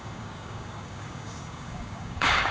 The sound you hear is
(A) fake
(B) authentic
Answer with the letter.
A